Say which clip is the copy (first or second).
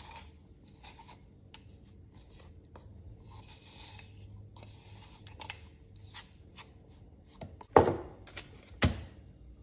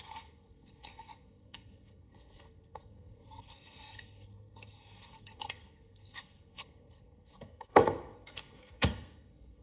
second